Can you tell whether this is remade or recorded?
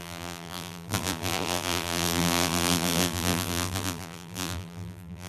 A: remade